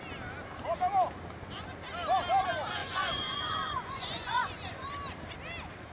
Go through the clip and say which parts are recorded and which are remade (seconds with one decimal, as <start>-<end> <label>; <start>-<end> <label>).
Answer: 0.0-2.8 recorded; 2.8-4.9 remade; 4.9-5.9 recorded